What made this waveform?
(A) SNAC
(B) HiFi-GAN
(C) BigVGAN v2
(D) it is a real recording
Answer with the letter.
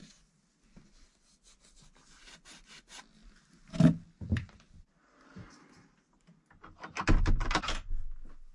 D